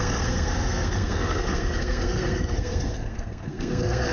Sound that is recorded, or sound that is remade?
remade